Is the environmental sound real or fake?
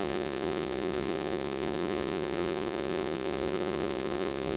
fake